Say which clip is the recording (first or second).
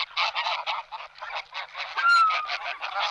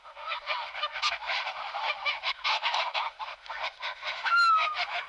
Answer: first